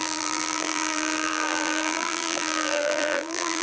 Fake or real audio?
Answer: fake